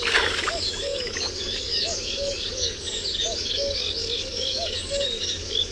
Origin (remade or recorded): remade